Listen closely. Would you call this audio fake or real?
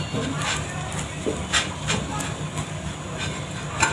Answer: real